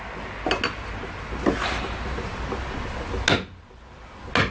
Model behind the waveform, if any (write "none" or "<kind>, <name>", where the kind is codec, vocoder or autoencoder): none